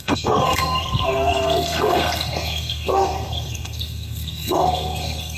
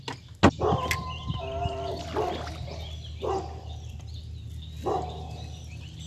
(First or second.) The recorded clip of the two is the second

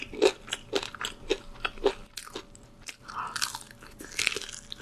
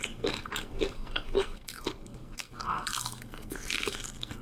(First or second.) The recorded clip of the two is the first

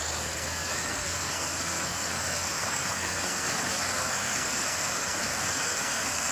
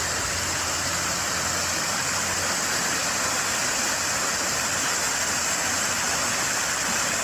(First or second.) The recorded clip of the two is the second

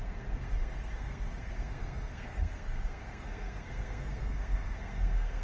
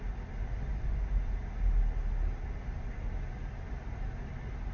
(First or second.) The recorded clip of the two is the second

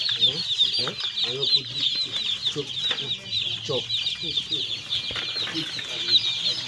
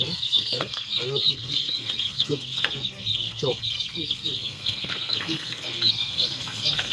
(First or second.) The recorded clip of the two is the first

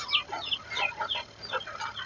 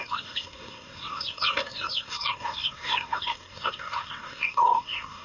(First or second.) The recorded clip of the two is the first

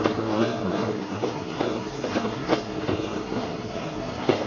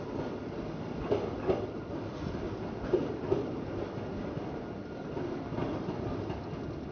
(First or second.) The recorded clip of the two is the second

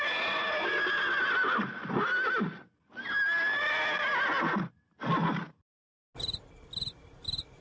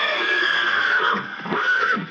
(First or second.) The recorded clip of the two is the first